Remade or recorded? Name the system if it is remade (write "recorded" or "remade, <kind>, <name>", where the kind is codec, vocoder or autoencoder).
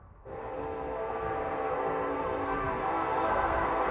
remade, codec, SNAC